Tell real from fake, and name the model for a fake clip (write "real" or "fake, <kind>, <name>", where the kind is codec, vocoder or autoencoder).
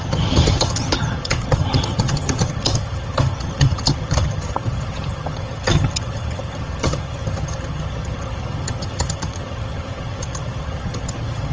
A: fake, vocoder, HiFi-GAN